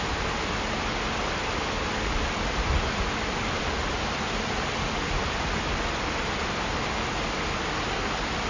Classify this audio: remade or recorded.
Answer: recorded